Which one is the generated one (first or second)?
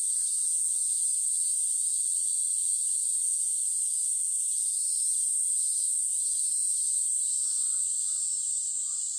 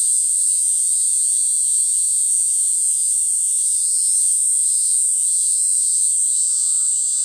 second